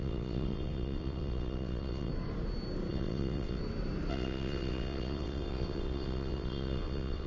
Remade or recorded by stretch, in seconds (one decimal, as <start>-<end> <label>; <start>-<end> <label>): 0.0-2.1 remade; 2.1-2.9 recorded; 2.9-3.6 remade; 3.6-4.1 recorded; 4.1-7.3 remade